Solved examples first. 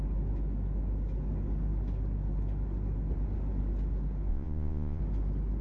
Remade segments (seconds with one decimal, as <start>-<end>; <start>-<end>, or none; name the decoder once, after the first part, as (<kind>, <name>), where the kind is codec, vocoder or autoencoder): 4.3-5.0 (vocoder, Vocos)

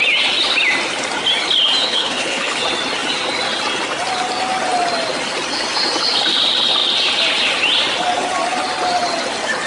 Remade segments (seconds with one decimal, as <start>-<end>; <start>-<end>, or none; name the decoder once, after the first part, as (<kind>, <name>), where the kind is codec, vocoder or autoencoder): 1.8-2.6 (codec, HILCodec)

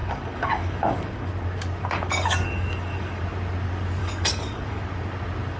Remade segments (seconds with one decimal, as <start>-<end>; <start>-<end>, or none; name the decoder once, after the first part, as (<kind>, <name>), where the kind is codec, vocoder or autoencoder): 0.0-1.3 (codec, DAC); 1.8-3.2; 4.0-4.8

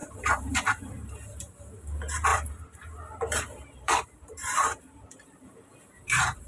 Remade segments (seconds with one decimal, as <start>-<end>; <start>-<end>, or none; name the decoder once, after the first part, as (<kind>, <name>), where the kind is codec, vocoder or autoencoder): 0.0-1.5 (vocoder, BigVGAN v2); 2.3-6.5